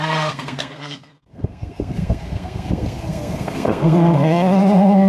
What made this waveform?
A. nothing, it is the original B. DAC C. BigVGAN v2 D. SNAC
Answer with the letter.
D